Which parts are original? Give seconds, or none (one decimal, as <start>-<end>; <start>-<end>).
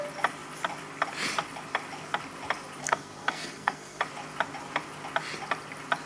0.0-2.8; 4.0-6.1